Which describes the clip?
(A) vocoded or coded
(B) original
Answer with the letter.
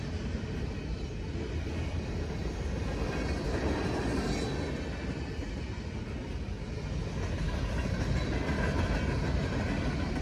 B